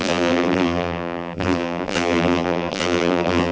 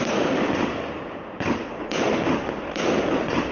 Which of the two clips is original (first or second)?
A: second